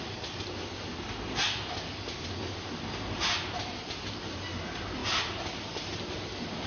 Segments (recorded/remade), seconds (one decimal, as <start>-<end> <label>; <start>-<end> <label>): 0.0-6.7 recorded